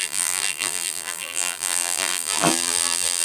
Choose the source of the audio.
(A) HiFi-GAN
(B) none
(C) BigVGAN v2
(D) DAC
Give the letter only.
C